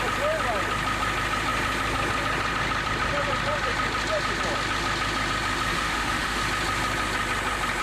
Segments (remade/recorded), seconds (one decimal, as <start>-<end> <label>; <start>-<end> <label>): 0.0-5.7 recorded; 5.7-6.4 remade; 6.4-7.8 recorded